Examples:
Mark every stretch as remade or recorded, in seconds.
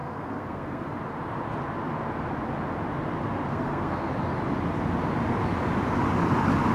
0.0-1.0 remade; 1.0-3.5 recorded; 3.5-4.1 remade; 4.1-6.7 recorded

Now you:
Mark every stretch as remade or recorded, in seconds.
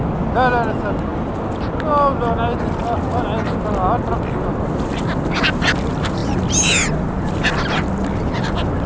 0.0-8.9 recorded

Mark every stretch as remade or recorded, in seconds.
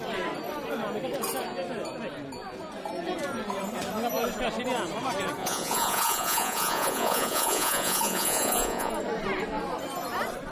0.0-5.4 recorded; 5.4-8.9 remade; 8.9-10.5 recorded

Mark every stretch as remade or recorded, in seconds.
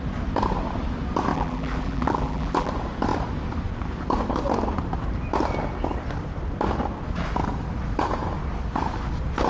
0.0-1.3 recorded; 1.3-2.7 remade; 2.7-9.5 recorded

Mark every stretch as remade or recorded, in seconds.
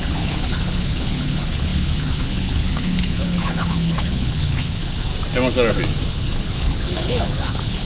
0.0-5.1 remade; 5.1-6.1 recorded; 6.1-7.8 remade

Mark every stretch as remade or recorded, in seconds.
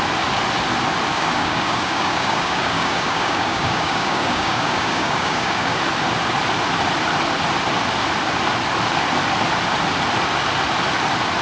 0.0-1.1 recorded; 1.1-5.8 remade; 5.8-11.4 recorded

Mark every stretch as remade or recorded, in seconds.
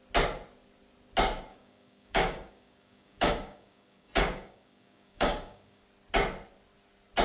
0.0-1.5 recorded; 1.5-5.8 remade; 5.8-7.2 recorded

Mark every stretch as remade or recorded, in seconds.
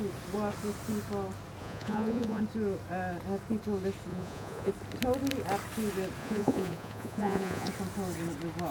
0.0-1.6 recorded; 1.6-2.4 remade; 2.4-4.1 recorded; 4.1-4.7 remade; 4.7-6.2 recorded; 6.2-7.7 remade; 7.7-8.7 recorded